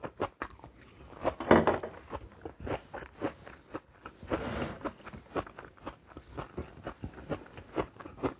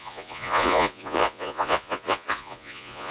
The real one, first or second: first